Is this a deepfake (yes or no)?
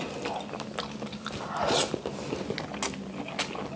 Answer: no